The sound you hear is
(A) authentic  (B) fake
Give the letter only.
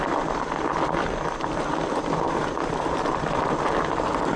A